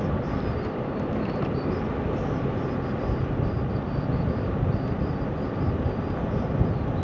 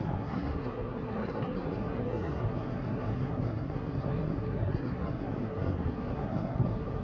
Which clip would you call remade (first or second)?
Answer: second